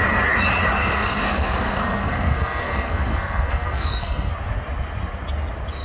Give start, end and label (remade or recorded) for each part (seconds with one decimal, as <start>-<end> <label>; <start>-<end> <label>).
0.0-0.8 recorded; 0.8-4.3 remade; 4.3-5.8 recorded